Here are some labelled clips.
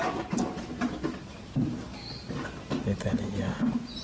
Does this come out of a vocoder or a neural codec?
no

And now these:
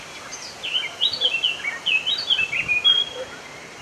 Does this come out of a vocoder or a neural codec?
no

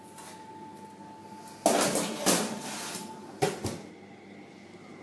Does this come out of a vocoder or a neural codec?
no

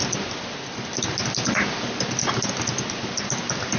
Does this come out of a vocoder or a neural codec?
no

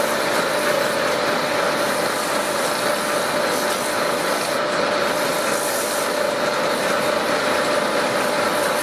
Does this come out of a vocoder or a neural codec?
no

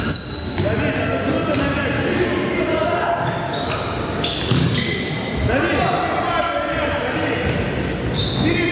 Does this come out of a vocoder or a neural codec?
no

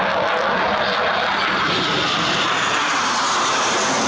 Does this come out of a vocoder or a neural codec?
no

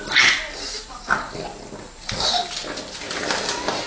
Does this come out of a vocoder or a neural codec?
no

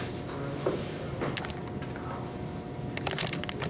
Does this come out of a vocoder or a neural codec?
no